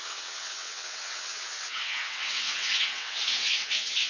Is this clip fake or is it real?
fake